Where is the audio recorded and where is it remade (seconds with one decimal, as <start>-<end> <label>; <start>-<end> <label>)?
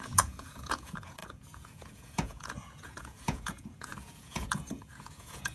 0.0-5.5 remade